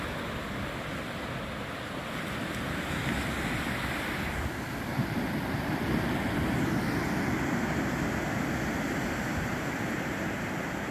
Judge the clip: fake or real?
real